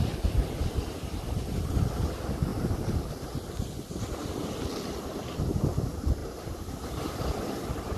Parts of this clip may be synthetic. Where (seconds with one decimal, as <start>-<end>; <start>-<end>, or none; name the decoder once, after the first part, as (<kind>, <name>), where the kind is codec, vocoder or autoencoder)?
2.5-4.3 (vocoder, BigVGAN v2); 6.2-8.0